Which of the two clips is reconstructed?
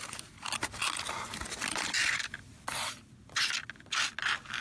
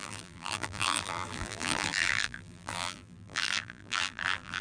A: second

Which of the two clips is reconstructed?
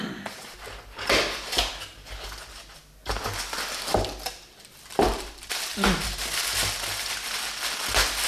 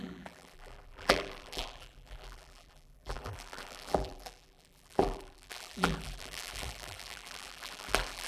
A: second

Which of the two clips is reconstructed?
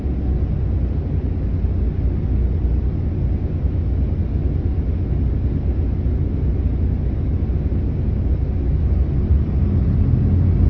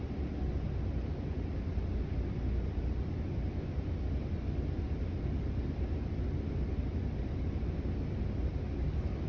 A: second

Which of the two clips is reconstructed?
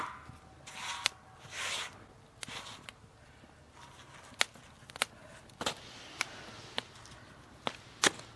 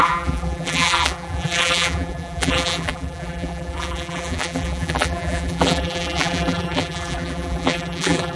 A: second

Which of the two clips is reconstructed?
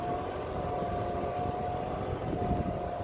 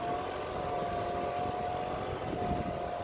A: first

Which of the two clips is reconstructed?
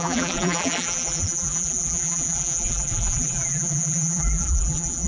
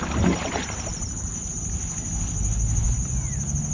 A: first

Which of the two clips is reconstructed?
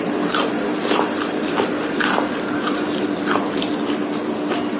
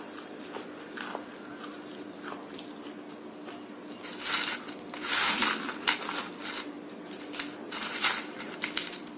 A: first